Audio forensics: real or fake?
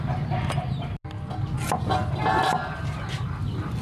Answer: real